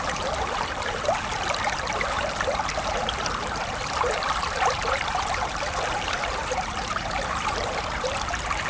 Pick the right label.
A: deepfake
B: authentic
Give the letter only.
A